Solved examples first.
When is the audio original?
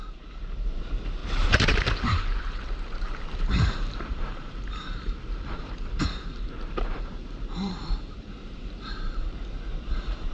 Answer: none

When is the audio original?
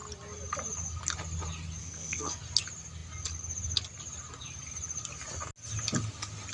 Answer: 0.0-1.8; 2.4-6.5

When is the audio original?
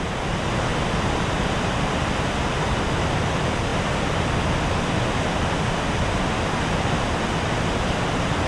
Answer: 0.0-8.5